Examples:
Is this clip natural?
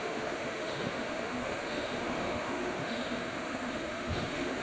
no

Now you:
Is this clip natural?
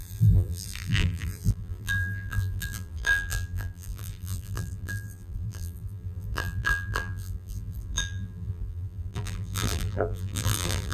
no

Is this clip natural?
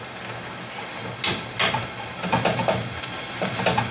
yes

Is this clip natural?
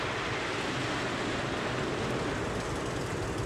yes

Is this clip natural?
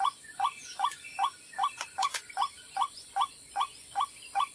no